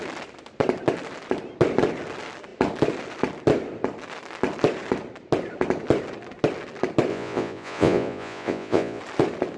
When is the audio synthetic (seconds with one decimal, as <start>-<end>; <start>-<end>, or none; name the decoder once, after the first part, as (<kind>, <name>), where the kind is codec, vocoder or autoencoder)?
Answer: 7.1-9.0 (vocoder, Vocos)